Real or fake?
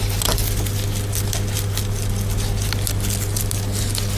real